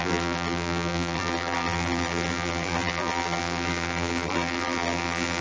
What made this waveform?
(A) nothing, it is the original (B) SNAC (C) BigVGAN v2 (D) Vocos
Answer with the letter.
C